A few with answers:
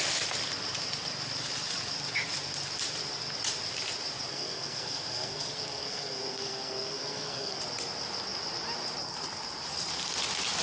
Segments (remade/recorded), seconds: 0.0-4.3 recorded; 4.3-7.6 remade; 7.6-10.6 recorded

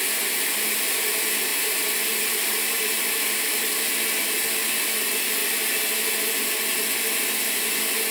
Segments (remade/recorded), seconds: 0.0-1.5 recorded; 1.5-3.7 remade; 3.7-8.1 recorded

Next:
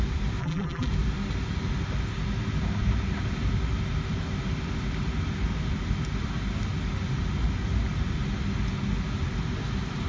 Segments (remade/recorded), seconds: 0.0-0.4 recorded; 0.4-0.9 remade; 0.9-10.1 recorded

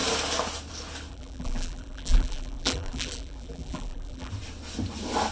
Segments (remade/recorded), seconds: 0.0-1.1 recorded; 1.1-4.3 remade; 4.3-5.3 recorded

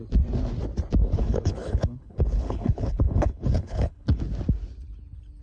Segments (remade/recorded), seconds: 0.0-1.0 recorded; 1.0-4.2 remade; 4.2-5.4 recorded

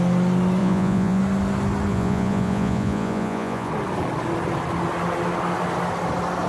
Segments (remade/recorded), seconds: 0.0-0.6 recorded; 0.6-1.2 remade; 1.2-1.9 recorded; 1.9-3.7 remade; 3.7-6.5 recorded